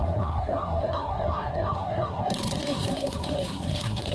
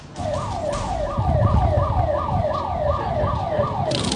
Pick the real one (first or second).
second